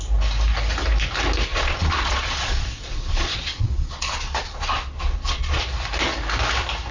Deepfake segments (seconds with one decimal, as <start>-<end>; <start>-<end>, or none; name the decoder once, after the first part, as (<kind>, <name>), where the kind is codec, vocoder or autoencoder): 1.5-5.6 (vocoder, Vocos)